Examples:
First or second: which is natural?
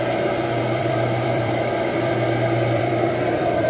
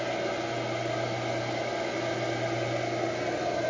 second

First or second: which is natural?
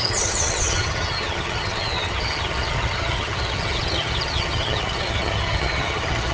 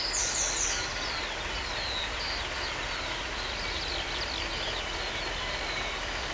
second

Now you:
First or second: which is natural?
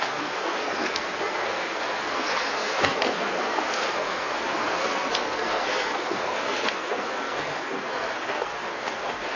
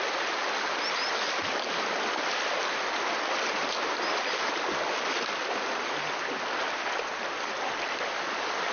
second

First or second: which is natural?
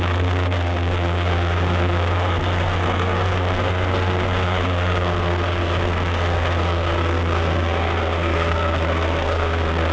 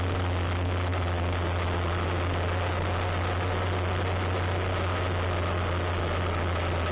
second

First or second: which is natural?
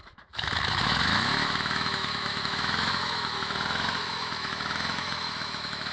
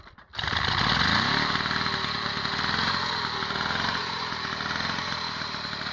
second